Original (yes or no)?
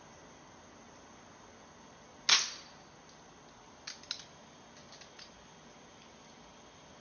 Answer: yes